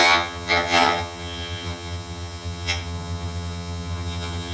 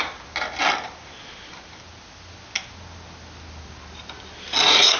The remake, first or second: first